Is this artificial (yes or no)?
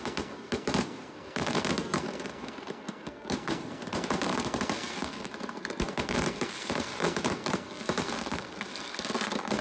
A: yes